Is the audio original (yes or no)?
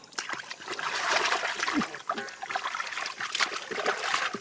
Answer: yes